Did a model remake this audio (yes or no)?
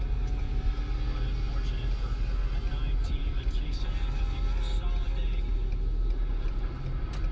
no